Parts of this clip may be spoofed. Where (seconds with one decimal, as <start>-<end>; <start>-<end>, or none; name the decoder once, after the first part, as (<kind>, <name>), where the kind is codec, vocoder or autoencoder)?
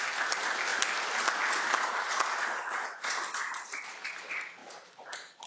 4.6-5.5 (vocoder, BigVGAN v2)